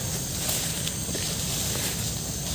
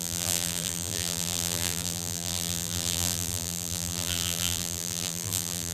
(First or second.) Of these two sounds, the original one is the first